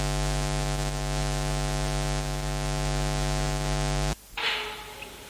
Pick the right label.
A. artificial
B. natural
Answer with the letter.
B